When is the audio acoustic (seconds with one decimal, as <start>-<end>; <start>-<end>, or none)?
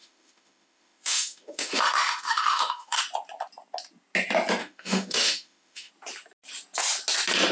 3.0-4.6; 5.9-7.5